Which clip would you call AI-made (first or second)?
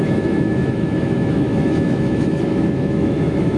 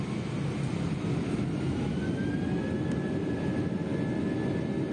first